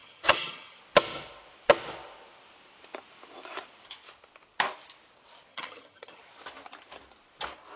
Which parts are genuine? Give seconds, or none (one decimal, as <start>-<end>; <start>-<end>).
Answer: 0.8-5.5; 6.2-7.8